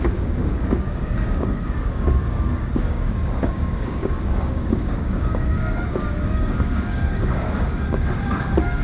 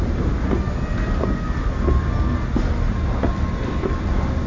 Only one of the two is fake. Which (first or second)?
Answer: first